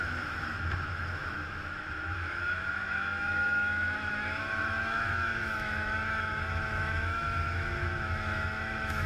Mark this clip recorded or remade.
remade